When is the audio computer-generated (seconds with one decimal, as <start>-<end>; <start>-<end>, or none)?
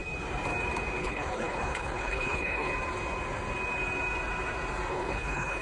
1.0-2.7; 4.9-5.6